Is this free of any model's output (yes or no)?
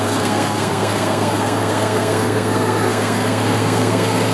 no